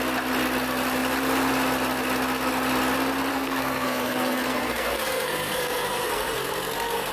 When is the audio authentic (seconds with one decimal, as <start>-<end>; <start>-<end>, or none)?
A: 0.0-3.3